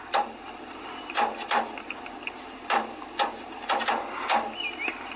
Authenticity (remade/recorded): recorded